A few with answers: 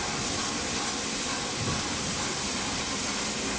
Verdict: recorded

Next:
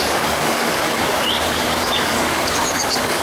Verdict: remade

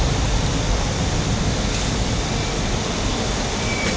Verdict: recorded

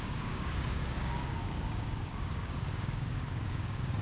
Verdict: remade